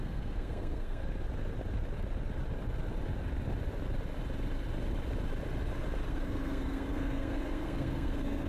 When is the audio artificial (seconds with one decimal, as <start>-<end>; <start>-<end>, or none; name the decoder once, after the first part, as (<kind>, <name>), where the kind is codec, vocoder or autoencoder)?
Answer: 0.0-1.0 (codec, SNAC); 6.1-8.5